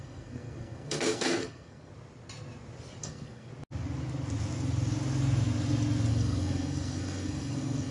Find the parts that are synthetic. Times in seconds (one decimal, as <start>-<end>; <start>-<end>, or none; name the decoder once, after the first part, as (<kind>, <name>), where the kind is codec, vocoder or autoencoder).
0.0-1.9 (codec, SNAC); 3.0-3.5; 6.1-7.9